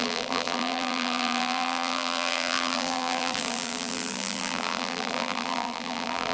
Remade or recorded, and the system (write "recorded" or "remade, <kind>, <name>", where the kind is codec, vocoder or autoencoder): remade, vocoder, BigVGAN v2